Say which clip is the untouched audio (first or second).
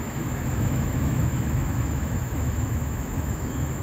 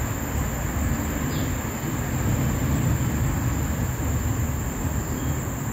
second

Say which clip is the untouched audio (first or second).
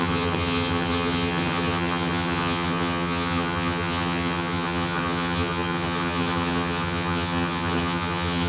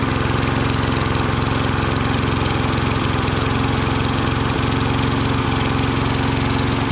second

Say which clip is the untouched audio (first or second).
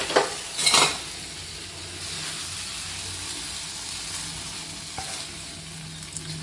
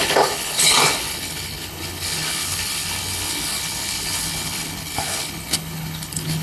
first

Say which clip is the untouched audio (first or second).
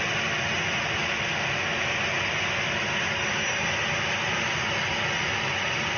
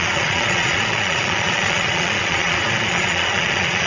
first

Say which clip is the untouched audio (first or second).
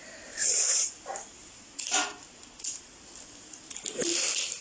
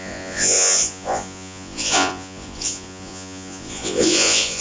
first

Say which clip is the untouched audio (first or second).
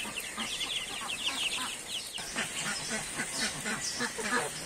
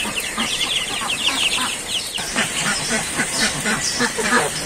first